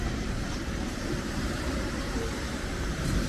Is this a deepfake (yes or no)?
yes